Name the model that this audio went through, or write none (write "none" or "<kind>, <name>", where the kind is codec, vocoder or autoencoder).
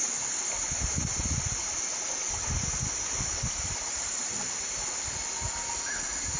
none